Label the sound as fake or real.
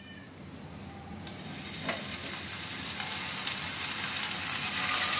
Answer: real